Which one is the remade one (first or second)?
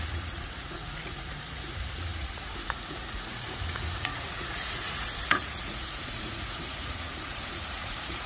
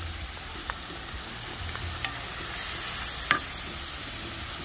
first